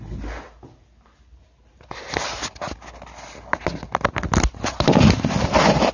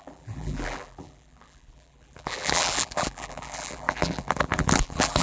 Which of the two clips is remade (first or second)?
second